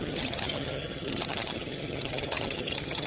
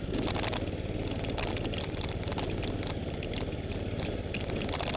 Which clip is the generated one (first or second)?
first